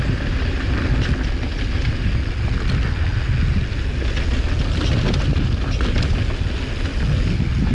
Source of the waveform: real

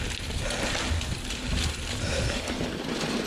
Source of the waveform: real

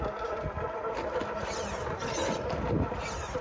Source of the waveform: real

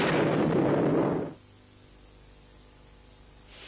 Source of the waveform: real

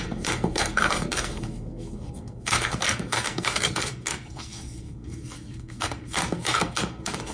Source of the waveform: fake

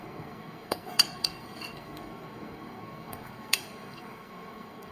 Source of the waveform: fake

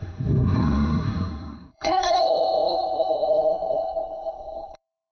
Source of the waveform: fake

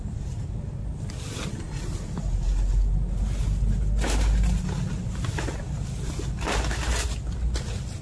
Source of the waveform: real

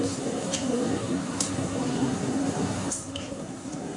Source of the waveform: fake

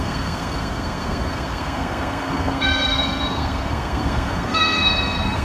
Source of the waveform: fake